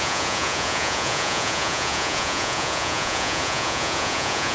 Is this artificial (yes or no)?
yes